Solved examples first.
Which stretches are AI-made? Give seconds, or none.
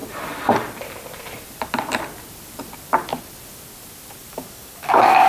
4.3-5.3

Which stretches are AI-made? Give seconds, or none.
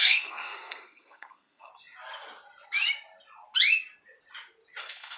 0.0-1.7; 4.8-5.2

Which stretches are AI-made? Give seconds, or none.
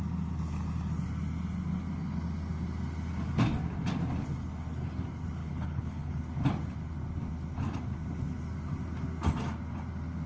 5.4-6.2